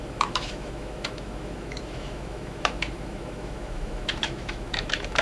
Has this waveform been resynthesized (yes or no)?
yes